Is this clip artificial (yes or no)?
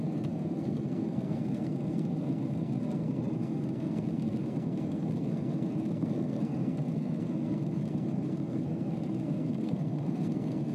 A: yes